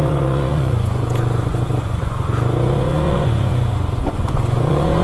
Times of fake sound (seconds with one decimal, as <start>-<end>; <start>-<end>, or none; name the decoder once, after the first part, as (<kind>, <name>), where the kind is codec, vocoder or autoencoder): 0.0-5.0 (vocoder, Vocos)